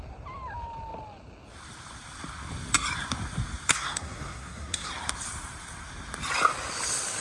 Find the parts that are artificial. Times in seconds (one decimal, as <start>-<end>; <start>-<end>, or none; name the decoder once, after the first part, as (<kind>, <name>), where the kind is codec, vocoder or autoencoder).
3.7-4.9 (codec, SNAC)